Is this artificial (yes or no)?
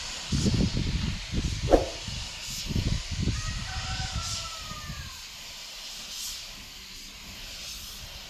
no